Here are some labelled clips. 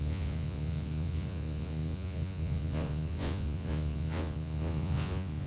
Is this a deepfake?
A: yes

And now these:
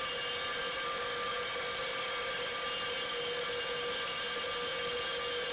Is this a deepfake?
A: no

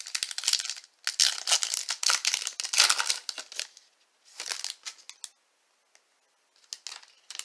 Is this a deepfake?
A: no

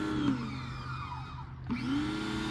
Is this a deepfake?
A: no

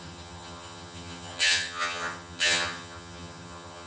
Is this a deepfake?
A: yes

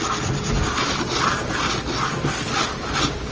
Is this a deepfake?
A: no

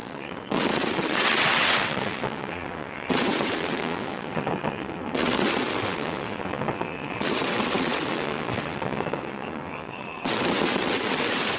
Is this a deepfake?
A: yes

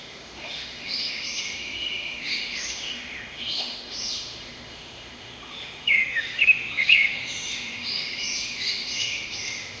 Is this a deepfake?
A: yes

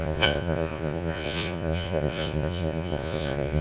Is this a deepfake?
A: yes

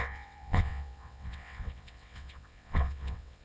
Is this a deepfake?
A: yes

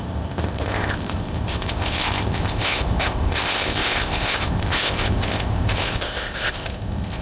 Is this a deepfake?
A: yes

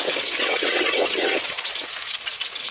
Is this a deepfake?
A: yes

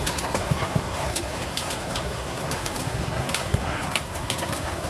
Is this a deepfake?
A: yes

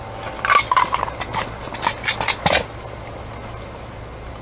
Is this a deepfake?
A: no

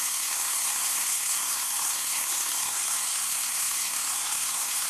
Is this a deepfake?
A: yes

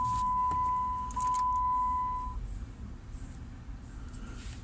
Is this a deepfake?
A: no